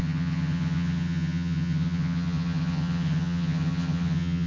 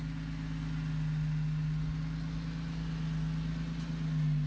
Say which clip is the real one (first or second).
second